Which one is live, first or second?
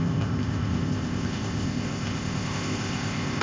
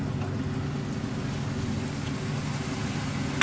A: second